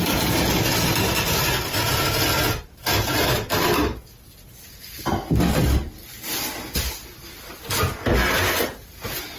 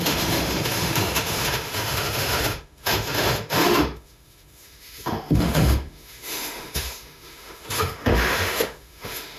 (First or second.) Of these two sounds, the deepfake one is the second